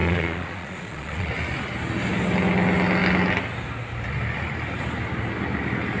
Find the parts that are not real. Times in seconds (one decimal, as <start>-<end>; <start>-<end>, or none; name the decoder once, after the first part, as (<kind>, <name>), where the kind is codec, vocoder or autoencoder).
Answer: 0.0-1.3 (vocoder, Vocos)